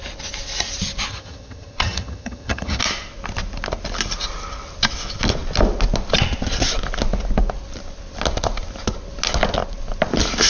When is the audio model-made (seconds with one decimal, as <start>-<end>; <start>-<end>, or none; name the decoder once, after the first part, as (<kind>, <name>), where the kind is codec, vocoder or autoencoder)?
1.1-2.8 (vocoder, HiFi-GAN)